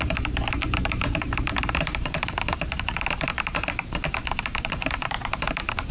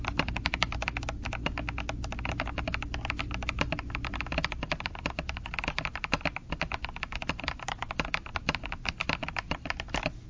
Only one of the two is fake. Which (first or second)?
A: first